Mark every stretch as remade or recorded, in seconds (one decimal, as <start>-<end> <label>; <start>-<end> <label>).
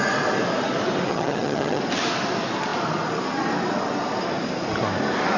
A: 0.0-1.1 recorded; 1.1-1.8 remade; 1.8-5.4 recorded